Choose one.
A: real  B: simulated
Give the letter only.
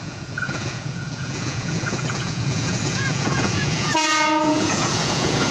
B